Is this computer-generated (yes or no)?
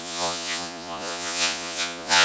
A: yes